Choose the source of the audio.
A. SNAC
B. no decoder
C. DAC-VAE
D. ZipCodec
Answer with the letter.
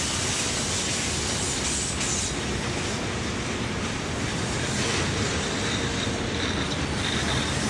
B